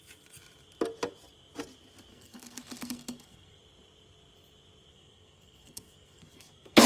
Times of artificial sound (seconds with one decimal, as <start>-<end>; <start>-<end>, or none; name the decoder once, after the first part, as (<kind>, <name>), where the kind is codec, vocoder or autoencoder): 2.1-3.6 (codec, SNAC); 4.9-6.9